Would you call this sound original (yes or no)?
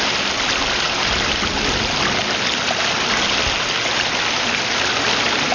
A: yes